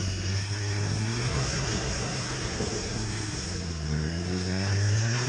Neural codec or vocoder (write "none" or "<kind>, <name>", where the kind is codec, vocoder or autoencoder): codec, SNAC